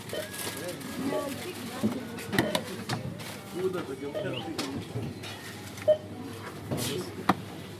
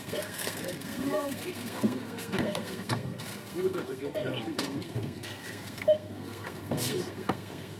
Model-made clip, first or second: second